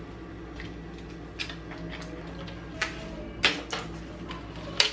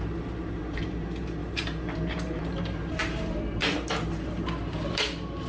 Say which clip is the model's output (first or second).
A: second